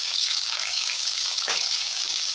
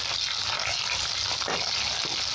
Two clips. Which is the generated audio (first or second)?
first